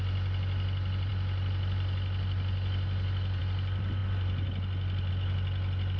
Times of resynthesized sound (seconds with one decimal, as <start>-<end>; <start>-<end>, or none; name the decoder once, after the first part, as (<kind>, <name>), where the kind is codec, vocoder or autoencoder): none